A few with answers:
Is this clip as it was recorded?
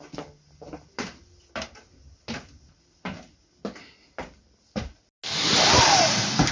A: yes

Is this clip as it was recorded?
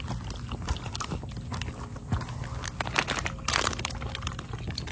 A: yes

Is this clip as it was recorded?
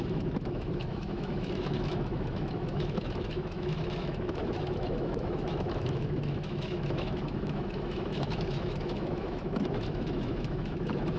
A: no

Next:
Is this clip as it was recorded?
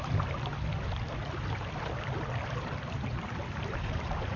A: yes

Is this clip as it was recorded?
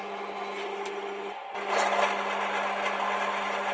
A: yes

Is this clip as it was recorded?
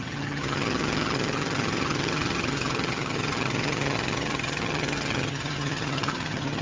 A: no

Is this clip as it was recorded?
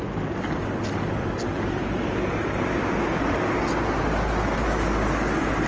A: yes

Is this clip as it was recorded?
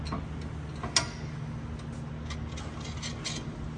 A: yes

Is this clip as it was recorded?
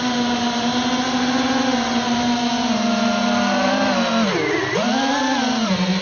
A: yes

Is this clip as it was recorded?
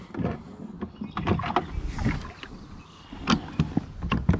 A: yes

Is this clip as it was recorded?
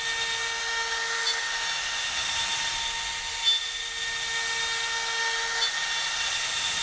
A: yes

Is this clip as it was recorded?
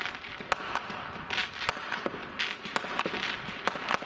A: yes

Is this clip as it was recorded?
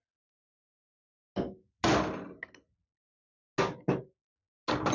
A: yes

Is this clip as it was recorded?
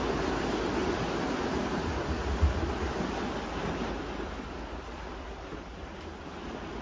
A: yes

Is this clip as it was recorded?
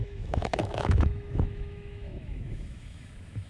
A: no